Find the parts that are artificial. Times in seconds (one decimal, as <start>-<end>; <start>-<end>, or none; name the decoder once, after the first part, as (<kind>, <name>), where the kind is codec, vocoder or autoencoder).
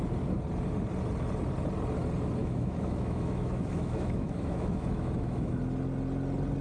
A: 2.4-5.5 (autoencoder, DAC-VAE)